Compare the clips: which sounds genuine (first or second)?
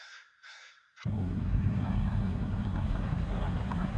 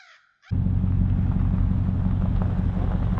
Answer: second